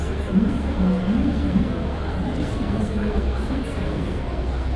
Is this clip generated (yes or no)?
yes